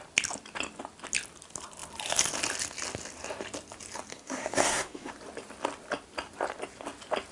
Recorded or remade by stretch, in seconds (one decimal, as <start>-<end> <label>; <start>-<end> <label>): 0.0-4.1 recorded; 4.1-5.1 remade; 5.1-7.3 recorded